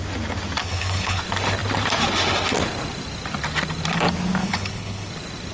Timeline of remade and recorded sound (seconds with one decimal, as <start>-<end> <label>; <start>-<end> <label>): 0.0-0.6 recorded; 0.6-1.2 remade; 1.2-4.4 recorded; 4.4-5.1 remade; 5.1-5.5 recorded